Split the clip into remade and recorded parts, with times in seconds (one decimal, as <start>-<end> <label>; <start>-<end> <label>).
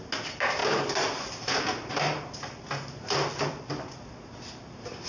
0.0-5.1 recorded